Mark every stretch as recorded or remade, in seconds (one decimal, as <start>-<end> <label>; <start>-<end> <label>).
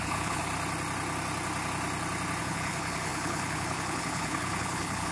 0.0-0.4 remade; 0.4-2.4 recorded; 2.4-5.1 remade